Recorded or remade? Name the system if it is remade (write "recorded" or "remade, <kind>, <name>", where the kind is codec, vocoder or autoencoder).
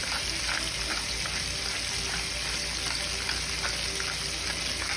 recorded